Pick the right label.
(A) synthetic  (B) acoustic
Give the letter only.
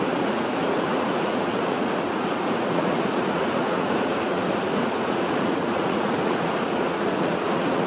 A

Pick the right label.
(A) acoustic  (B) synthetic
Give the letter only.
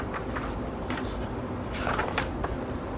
A